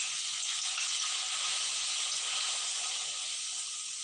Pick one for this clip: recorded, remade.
remade